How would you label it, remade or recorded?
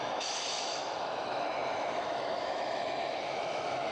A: remade